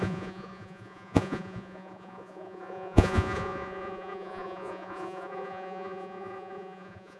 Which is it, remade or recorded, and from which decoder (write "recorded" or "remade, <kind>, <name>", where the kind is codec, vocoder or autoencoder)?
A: remade, vocoder, Vocos